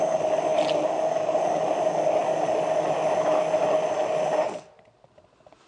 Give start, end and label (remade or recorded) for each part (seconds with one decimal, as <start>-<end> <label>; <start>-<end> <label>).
0.0-5.7 recorded

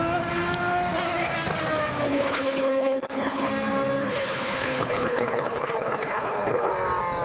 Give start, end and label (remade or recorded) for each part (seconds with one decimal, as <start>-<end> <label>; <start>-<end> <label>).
0.0-2.1 recorded; 2.1-3.5 remade; 3.5-4.0 recorded; 4.0-6.7 remade; 6.7-7.2 recorded

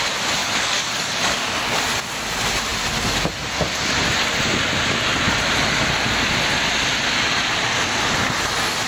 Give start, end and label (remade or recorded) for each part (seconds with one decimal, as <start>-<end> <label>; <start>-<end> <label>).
0.0-0.4 recorded; 0.4-1.8 remade; 1.8-8.9 recorded

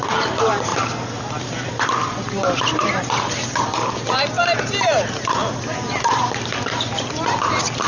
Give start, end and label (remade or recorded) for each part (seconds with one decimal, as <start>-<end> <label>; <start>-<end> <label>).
0.0-0.7 remade; 0.7-1.2 recorded; 1.2-7.9 remade